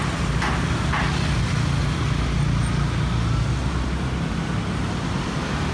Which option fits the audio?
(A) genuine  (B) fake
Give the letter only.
A